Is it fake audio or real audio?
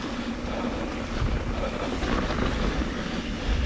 real